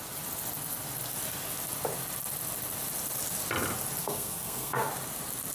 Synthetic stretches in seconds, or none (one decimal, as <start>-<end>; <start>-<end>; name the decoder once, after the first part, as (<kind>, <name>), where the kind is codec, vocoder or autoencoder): 4.0-4.9 (codec, SNAC)